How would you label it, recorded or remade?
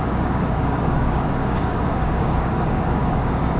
remade